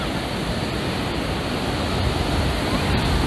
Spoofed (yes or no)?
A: no